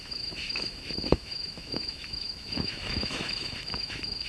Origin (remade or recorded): remade